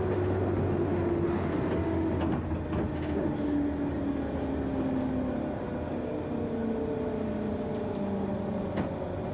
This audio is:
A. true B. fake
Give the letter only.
A